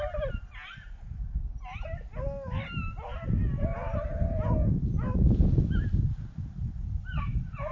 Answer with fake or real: real